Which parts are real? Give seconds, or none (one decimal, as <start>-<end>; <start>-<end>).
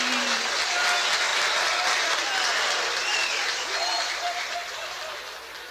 0.0-1.3; 4.7-5.7